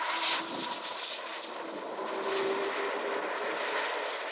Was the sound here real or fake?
real